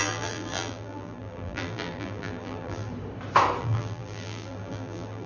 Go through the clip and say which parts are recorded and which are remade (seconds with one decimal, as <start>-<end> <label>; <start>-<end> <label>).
0.0-2.9 remade; 2.9-3.6 recorded; 3.6-5.3 remade